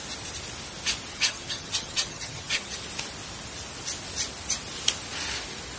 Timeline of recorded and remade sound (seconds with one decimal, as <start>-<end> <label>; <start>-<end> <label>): 0.0-1.1 recorded; 1.1-2.7 remade; 2.7-5.8 recorded